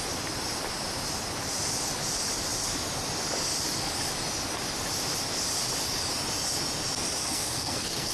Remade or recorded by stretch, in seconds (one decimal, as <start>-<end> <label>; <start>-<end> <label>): 0.0-7.2 recorded; 7.2-8.1 remade